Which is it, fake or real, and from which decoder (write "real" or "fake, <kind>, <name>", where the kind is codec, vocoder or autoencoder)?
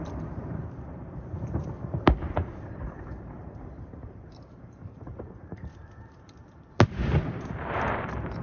fake, vocoder, BigVGAN v2